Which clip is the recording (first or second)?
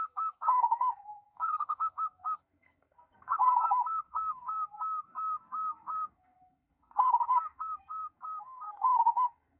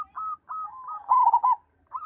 second